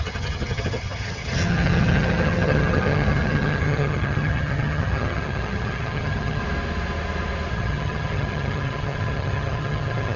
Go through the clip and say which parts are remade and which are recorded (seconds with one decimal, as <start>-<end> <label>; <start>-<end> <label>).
0.0-6.4 remade; 6.4-7.5 recorded; 7.5-10.2 remade